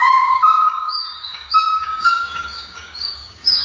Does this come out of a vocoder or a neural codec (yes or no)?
yes